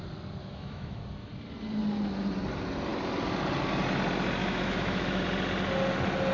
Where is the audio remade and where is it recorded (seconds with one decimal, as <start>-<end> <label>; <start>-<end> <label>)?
0.0-0.4 recorded; 0.4-1.0 remade; 1.0-4.4 recorded; 4.4-5.2 remade; 5.2-6.3 recorded